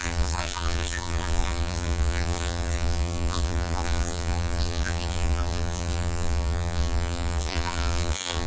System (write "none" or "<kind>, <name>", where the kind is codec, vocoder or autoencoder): vocoder, BigVGAN v2